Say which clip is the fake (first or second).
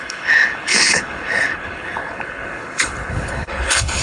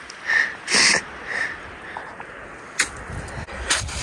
first